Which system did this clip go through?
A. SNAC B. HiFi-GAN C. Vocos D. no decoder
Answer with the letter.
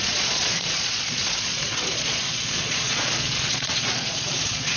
C